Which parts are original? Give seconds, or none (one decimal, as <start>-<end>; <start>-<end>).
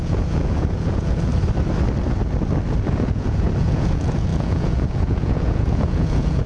1.3-2.9